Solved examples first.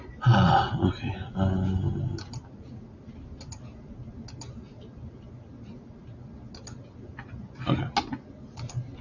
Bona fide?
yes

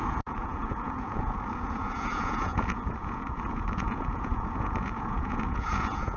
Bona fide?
no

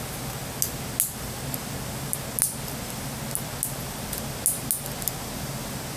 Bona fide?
yes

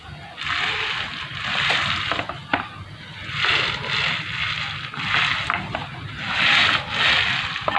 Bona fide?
yes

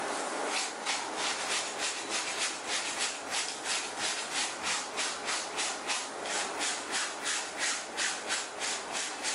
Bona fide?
yes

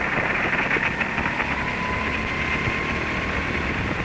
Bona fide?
yes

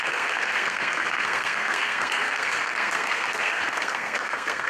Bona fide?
no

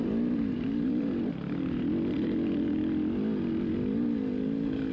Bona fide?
yes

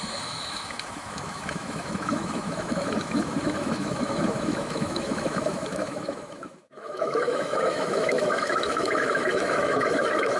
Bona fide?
no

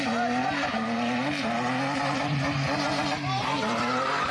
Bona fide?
yes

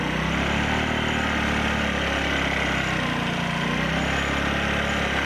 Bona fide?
yes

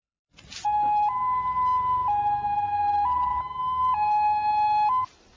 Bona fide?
yes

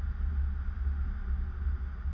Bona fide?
yes